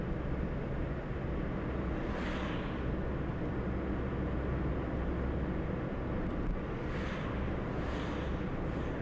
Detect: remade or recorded recorded